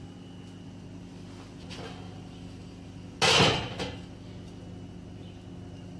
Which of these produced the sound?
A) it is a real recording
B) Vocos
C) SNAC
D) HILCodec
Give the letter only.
A